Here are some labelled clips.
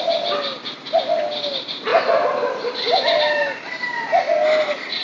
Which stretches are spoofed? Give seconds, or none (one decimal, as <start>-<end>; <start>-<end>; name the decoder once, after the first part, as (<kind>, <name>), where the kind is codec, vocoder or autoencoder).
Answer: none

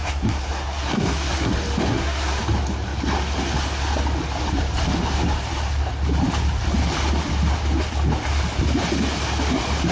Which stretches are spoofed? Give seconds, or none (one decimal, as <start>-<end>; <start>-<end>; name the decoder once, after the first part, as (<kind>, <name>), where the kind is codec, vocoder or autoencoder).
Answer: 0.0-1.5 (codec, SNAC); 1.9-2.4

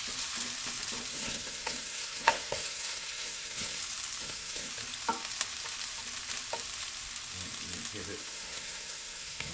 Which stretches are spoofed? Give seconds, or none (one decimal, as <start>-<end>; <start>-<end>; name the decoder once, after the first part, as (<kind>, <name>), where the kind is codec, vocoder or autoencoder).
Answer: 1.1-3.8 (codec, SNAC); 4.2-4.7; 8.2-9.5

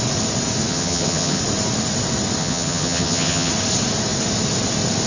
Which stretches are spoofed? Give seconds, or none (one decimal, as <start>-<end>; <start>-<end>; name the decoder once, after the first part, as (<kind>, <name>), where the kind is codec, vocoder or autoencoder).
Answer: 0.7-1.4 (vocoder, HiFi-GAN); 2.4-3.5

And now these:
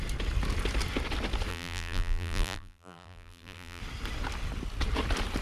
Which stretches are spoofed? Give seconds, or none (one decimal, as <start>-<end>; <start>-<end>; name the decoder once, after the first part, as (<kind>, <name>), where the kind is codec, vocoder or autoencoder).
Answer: 1.5-3.8 (vocoder, BigVGAN v2)

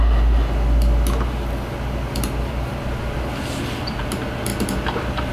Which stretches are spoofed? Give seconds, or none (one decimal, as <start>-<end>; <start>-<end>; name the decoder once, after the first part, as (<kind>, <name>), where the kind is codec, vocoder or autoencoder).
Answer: none